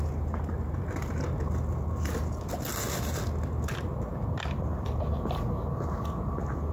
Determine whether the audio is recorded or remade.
recorded